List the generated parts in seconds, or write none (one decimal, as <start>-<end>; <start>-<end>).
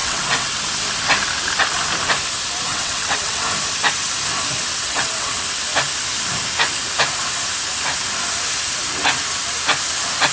0.0-0.6; 2.7-3.4; 4.7-5.4